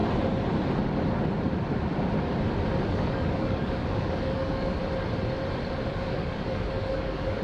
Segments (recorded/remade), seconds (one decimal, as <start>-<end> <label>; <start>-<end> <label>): 0.0-2.9 recorded; 2.9-4.8 remade; 4.8-5.9 recorded; 5.9-7.4 remade